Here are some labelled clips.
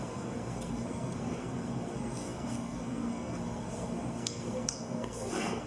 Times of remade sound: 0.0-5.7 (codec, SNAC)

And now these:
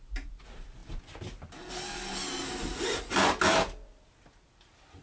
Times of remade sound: none

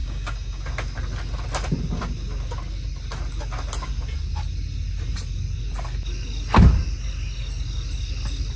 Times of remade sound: 0.0-0.6 (codec, DAC)

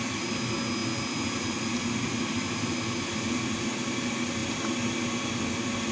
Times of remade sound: none

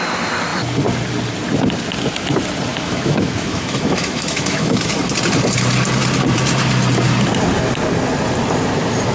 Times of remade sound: 2.7-4.9 (autoencoder, DAC-VAE)

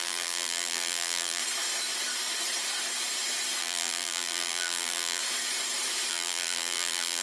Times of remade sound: 0.0-1.4 (vocoder, BigVGAN v2); 3.6-5.2; 6.1-7.2